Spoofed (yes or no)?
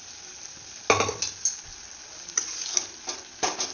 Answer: no